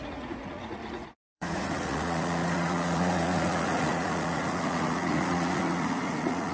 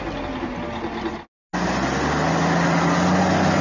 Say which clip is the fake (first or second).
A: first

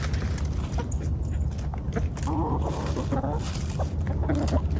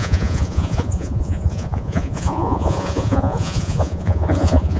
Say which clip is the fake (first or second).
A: second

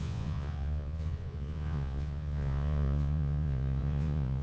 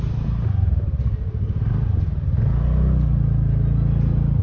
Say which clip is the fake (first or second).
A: first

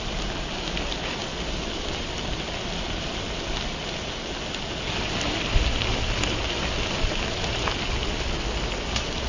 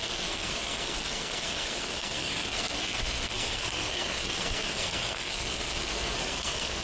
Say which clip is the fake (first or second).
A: second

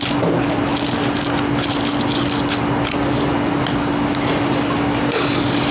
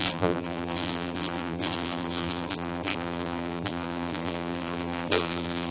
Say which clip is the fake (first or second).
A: second